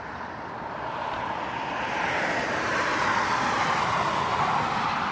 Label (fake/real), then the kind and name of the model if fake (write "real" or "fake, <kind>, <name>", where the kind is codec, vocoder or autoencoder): real